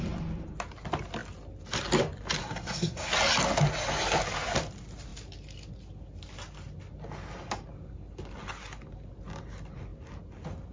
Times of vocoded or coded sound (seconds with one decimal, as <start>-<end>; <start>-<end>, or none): 2.4-3.1